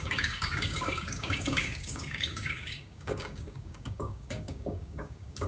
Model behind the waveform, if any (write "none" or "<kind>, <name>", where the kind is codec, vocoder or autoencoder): codec, DAC